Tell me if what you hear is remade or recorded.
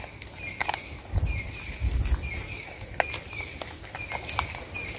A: recorded